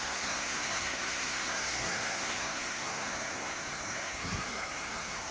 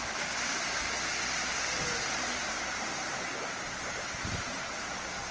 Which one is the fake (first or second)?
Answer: first